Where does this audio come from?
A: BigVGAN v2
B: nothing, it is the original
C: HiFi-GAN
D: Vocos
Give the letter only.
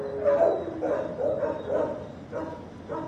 B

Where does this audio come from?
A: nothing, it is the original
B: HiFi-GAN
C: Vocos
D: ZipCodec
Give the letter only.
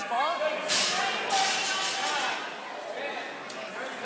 A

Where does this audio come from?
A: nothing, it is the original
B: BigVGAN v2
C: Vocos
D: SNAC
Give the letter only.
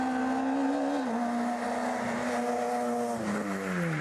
A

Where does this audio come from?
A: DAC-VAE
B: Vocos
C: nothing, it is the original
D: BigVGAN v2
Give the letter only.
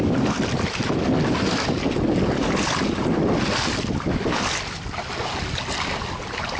C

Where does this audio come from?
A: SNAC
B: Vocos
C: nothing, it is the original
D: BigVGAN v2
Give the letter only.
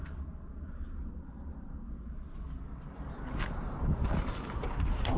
D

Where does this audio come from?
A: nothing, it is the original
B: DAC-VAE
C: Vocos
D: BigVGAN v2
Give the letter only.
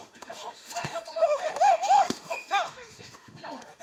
B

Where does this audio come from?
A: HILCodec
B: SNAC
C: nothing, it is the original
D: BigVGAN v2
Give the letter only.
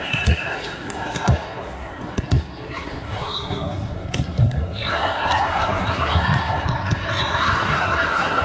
B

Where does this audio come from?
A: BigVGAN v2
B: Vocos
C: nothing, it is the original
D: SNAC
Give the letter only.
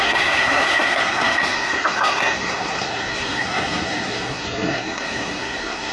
D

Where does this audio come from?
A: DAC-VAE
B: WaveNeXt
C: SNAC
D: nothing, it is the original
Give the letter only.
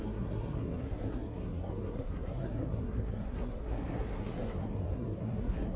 C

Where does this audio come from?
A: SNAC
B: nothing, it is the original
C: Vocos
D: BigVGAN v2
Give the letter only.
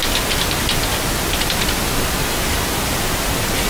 B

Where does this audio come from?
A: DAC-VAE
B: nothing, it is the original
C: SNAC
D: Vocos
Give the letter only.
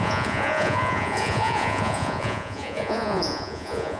D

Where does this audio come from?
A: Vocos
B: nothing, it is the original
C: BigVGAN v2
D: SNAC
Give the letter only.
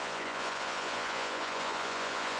A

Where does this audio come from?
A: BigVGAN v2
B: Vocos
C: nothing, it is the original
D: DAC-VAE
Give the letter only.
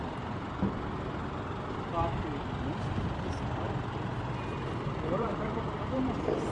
C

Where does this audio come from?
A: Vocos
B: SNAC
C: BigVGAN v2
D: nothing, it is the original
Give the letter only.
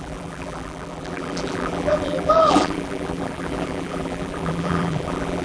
C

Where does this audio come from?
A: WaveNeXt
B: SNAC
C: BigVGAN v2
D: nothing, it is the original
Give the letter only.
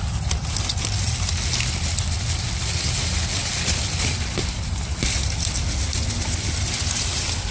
D